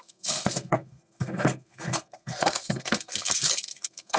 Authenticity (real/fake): fake